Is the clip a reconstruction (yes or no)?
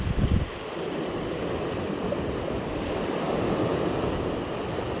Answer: no